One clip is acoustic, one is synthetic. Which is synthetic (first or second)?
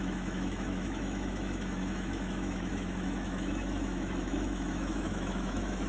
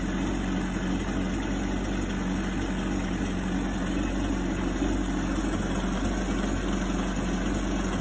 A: first